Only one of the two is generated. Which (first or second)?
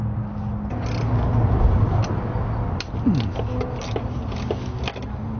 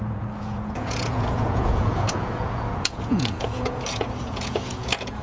second